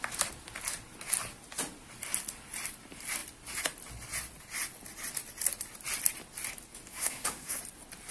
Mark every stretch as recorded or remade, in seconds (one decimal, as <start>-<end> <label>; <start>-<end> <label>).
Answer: 0.0-6.9 recorded; 6.9-7.6 remade; 7.6-8.1 recorded

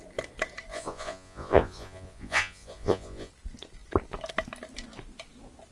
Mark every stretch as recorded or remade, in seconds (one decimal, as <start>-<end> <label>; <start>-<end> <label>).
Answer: 0.0-0.7 recorded; 0.7-3.3 remade; 3.3-5.7 recorded

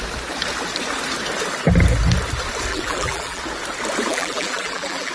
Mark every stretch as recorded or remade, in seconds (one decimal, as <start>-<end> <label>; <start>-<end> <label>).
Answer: 0.0-2.7 recorded; 2.7-3.4 remade; 3.4-4.1 recorded; 4.1-5.1 remade

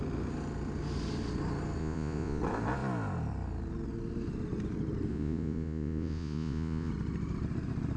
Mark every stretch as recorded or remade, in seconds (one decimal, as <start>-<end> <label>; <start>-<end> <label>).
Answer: 0.0-1.8 recorded; 1.8-2.4 remade; 2.4-5.1 recorded; 5.1-6.9 remade; 6.9-8.0 recorded

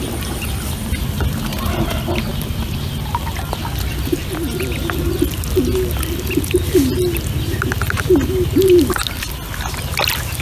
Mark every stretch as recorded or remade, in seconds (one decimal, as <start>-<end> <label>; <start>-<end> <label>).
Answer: 0.0-10.4 recorded

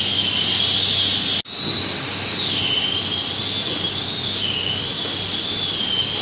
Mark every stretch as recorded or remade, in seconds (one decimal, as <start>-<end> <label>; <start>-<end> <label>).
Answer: 0.0-4.2 recorded; 4.2-4.8 remade; 4.8-6.2 recorded

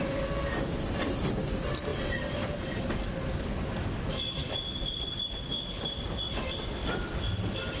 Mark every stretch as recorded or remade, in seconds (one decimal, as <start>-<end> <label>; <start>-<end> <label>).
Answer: 0.0-4.4 recorded; 4.4-5.5 remade; 5.5-7.8 recorded